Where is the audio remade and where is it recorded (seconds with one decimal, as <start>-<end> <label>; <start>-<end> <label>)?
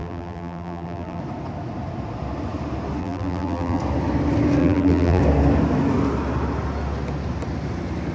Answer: 0.0-1.2 remade; 1.2-3.0 recorded; 3.0-3.8 remade; 3.8-4.6 recorded; 4.6-5.2 remade; 5.2-8.1 recorded